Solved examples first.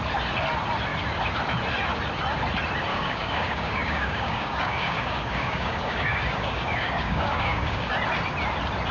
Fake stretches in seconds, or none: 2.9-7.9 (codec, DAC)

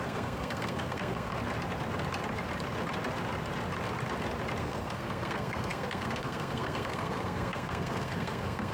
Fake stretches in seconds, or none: 0.0-1.3 (codec, SNAC); 4.6-8.7

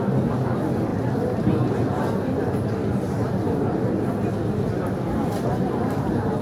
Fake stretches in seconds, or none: none

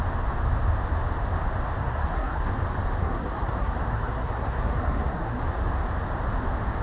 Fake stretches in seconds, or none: 1.8-2.5 (codec, SNAC); 3.0-5.4

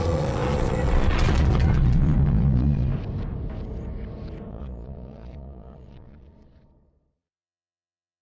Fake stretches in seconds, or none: 0.0-2.9 (vocoder, Vocos); 4.5-8.2

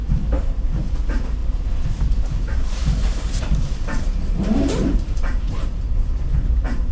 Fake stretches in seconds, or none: 0.5-1.4 (vocoder, BigVGAN v2); 2.2-6.9

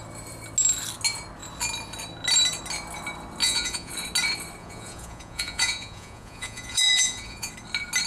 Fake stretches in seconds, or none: 3.4-3.9 (vocoder, Vocos); 4.6-7.5